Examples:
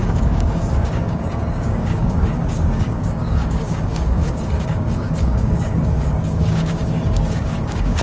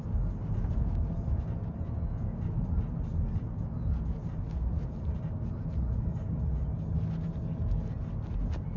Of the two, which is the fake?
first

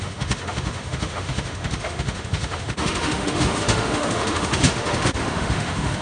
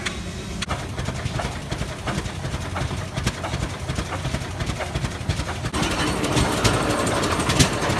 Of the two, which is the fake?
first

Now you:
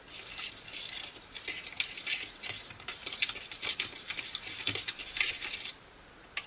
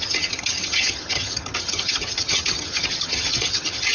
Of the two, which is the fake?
second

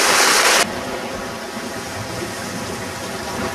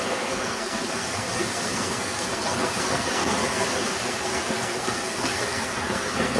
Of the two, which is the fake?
second